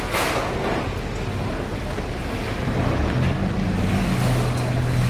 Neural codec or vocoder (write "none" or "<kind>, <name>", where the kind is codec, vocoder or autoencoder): none